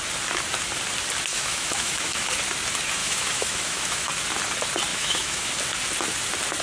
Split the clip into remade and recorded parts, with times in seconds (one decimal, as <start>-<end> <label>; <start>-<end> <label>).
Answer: 0.0-1.3 recorded; 1.3-2.3 remade; 2.3-3.0 recorded; 3.0-4.1 remade; 4.1-4.9 recorded; 4.9-5.5 remade; 5.5-6.6 recorded